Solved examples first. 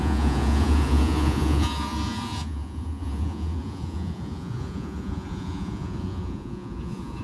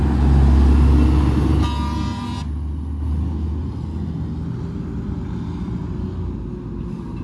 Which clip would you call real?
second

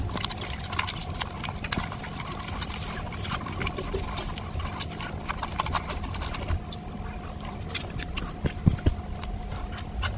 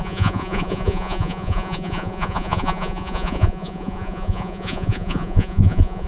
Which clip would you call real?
first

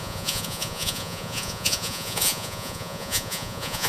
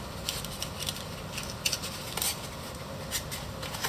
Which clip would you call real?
second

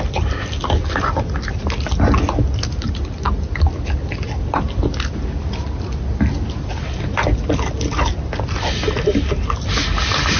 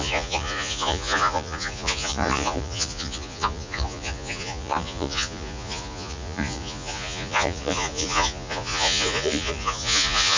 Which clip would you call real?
first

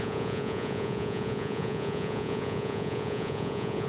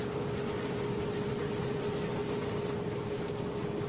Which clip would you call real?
second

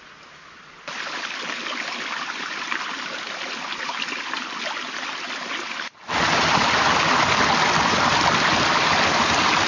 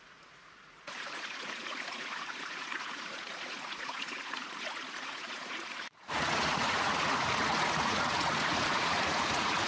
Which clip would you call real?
first